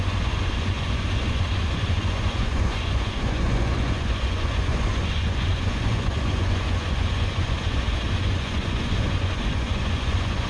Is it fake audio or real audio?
fake